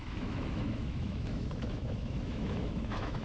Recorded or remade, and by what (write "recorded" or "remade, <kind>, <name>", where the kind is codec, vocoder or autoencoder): remade, autoencoder, DAC-VAE